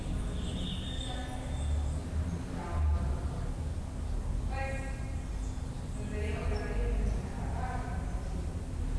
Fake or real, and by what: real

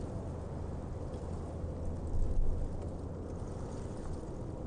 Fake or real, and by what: real